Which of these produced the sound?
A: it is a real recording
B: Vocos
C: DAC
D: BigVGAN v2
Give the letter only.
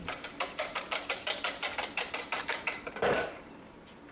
D